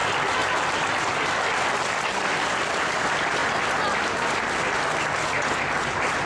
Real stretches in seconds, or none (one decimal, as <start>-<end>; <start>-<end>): 0.0-6.3